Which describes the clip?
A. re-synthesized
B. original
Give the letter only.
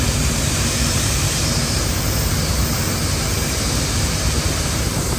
A